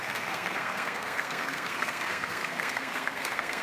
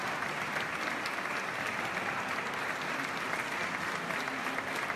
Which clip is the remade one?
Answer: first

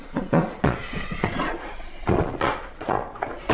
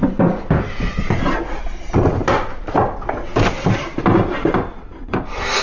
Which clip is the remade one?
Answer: first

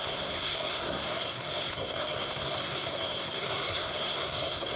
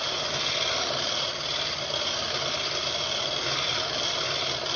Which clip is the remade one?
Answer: first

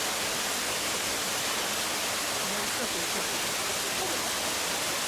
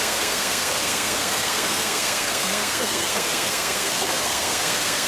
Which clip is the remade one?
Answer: second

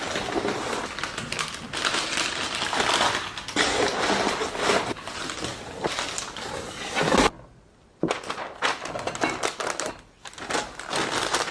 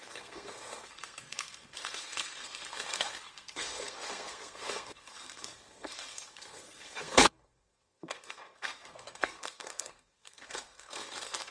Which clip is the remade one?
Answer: second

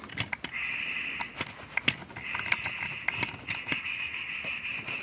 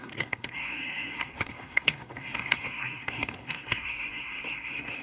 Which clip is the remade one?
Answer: second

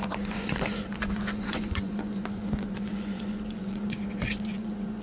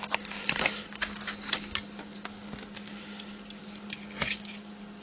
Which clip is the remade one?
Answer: first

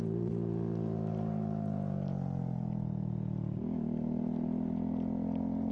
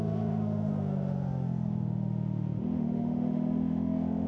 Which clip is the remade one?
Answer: second